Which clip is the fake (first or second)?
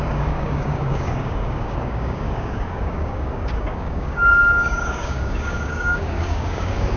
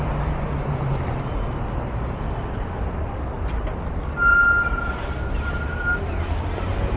first